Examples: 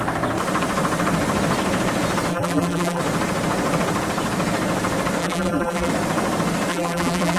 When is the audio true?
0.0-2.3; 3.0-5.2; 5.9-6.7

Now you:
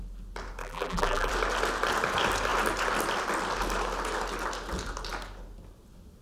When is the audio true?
0.0-0.6; 1.3-6.2

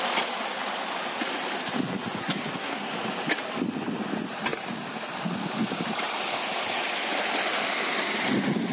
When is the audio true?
0.0-2.2; 2.9-8.7